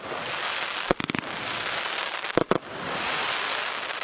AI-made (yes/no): no